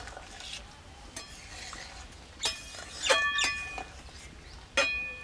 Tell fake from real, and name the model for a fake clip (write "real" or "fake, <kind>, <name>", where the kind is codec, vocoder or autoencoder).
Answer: real